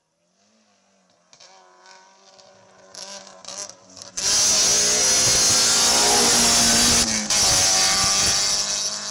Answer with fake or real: real